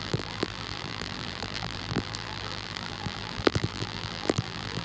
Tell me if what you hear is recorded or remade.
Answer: remade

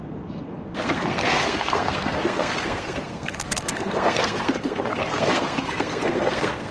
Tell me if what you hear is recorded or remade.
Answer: remade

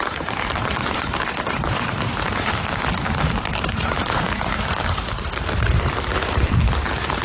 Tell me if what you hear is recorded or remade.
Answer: remade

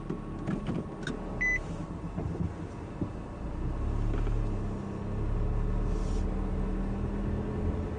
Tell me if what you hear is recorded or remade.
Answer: recorded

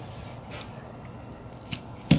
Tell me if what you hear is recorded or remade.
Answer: recorded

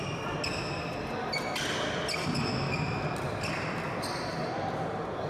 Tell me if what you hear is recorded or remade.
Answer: recorded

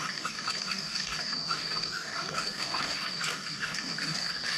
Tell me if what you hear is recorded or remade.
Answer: remade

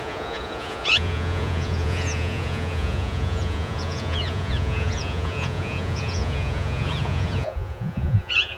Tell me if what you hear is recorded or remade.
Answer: remade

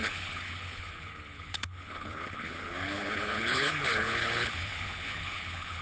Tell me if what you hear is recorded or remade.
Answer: remade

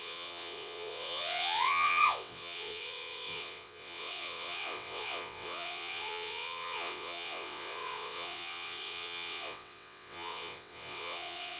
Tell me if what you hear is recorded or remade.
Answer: remade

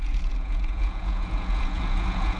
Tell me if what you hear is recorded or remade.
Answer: remade